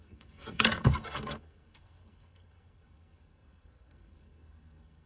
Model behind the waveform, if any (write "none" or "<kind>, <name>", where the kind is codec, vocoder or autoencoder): codec, SNAC